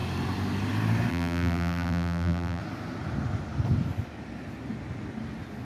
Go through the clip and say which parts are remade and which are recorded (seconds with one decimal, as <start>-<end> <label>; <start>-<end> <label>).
0.0-1.1 recorded; 1.1-2.6 remade; 2.6-5.6 recorded